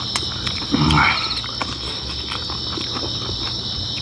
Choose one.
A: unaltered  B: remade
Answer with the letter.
A